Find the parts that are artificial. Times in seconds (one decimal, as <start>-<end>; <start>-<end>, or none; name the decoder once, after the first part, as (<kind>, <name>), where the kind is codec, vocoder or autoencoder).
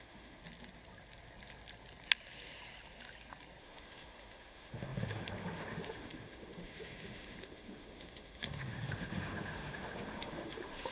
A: 0.0-0.4 (autoencoder, DAC-VAE); 3.6-10.9